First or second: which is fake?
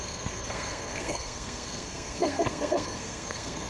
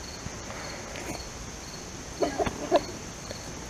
first